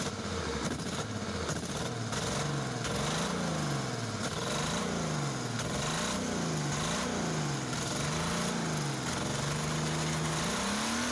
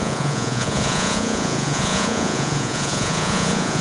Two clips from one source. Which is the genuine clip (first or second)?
first